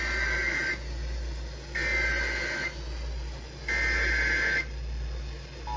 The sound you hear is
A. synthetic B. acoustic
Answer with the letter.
B